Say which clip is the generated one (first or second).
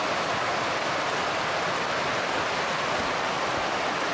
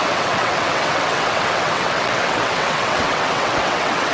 second